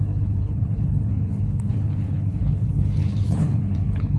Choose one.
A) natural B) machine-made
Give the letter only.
B